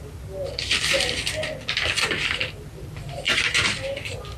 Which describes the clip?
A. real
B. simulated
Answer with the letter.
A